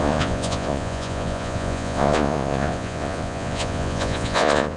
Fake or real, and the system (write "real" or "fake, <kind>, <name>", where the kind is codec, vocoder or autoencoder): fake, vocoder, Vocos